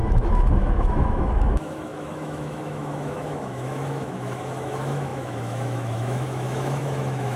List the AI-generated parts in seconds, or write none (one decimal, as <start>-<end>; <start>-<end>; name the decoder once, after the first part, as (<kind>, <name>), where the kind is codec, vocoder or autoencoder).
0.0-7.4 (autoencoder, DAC-VAE)